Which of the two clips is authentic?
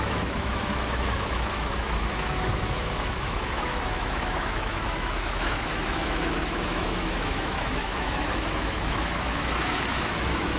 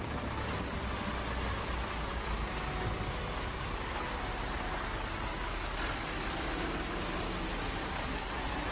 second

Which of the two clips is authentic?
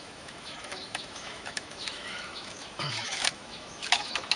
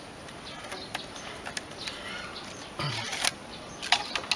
second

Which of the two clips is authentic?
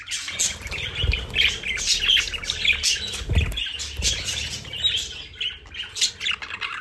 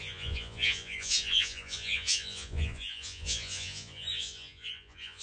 first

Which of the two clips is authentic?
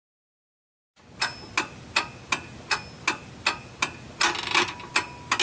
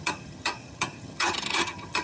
first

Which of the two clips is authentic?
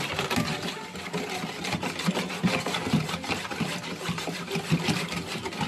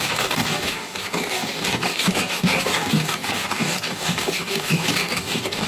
first